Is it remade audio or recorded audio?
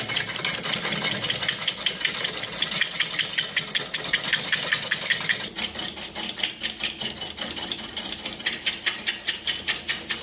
recorded